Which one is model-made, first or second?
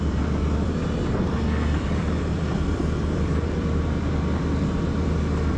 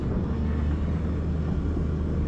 first